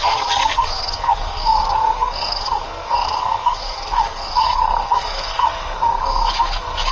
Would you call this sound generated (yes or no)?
yes